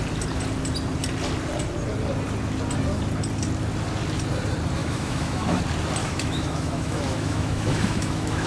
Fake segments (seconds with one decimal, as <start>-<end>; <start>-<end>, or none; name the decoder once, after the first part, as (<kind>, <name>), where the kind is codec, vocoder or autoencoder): 4.8-5.6 (autoencoder, DAC-VAE); 6.0-8.5

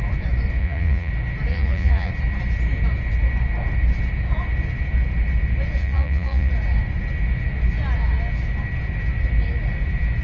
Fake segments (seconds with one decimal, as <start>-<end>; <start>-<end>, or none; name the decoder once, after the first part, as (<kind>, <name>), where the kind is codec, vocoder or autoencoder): 0.6-1.1 (vocoder, Vocos); 1.5-2.1; 5.8-6.5

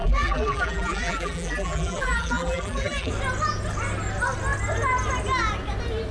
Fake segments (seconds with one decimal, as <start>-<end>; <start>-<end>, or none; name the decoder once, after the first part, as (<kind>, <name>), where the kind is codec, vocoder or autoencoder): 0.0-3.1 (vocoder, BigVGAN v2)

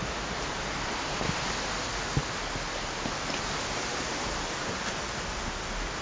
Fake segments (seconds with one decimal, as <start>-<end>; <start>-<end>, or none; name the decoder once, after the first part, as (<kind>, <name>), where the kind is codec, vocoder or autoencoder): none

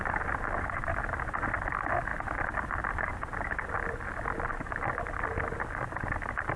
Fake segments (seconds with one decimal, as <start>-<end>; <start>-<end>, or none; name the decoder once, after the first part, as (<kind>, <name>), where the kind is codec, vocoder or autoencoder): none

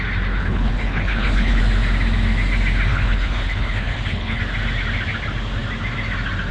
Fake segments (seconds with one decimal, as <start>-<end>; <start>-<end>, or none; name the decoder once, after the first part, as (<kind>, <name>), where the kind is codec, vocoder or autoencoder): 0.4-1.6 (codec, HILCodec); 2.9-4.4

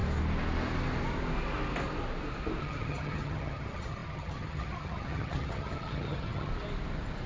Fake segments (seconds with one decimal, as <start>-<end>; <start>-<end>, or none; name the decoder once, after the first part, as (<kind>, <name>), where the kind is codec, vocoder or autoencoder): 2.6-6.5 (vocoder, HiFi-GAN)

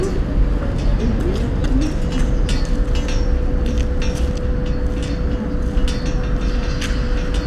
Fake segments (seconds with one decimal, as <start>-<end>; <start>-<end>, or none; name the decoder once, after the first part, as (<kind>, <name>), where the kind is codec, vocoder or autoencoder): none